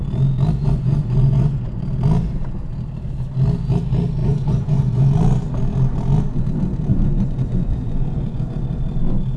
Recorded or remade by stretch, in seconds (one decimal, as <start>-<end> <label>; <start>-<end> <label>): 0.0-0.6 recorded; 0.6-1.8 remade; 1.8-4.2 recorded; 4.2-5.1 remade; 5.1-6.9 recorded; 6.9-8.6 remade; 8.6-9.4 recorded